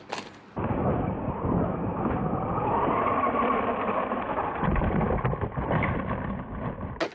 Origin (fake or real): real